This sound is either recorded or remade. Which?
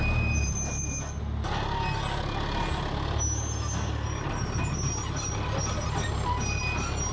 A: recorded